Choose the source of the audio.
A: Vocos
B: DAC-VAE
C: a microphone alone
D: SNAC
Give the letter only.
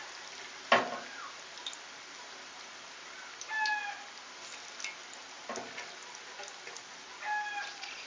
C